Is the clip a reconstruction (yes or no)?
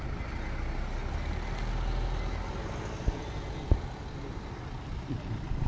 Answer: no